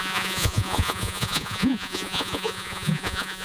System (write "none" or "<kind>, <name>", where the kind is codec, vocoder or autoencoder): vocoder, Vocos